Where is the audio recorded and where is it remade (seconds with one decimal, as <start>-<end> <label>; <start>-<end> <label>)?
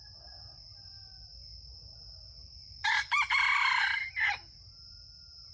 0.0-2.4 recorded; 2.4-4.4 remade; 4.4-5.5 recorded